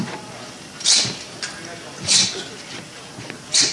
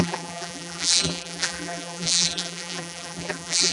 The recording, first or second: first